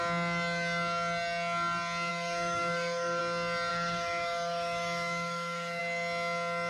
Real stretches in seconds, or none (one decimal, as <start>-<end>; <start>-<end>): 0.0-2.1; 3.2-3.7; 5.8-6.7